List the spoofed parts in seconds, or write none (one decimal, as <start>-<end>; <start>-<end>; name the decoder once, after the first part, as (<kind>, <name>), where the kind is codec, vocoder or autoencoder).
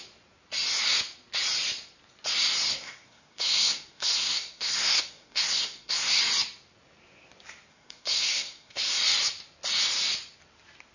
2.7-6.2 (codec, SNAC); 7.7-8.8